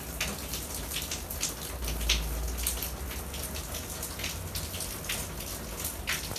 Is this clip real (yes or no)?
yes